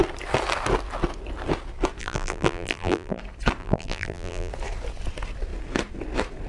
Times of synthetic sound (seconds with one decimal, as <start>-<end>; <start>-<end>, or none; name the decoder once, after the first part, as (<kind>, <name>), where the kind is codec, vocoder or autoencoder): 2.0-3.2 (vocoder, BigVGAN v2); 3.6-4.5